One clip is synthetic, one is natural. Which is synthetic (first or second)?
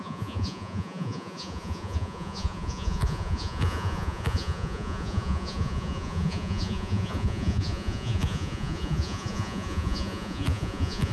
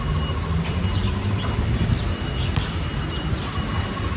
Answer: first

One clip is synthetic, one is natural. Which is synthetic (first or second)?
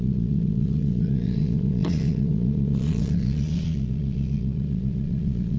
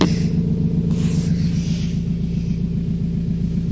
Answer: first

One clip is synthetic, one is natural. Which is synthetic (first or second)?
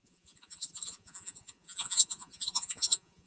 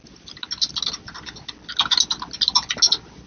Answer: first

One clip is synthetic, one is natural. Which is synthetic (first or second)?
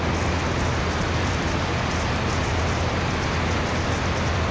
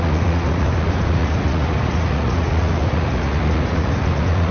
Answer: second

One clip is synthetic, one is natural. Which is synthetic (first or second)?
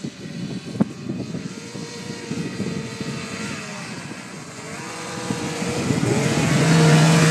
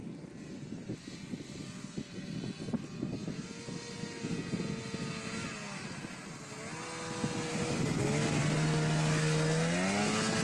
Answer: first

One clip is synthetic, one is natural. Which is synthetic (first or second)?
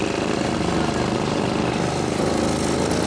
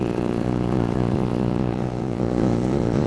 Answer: second